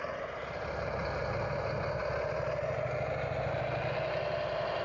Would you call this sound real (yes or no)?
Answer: yes